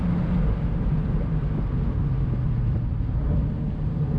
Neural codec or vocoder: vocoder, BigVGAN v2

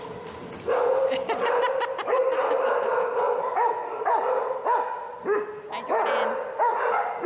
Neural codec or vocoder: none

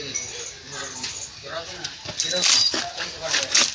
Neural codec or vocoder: none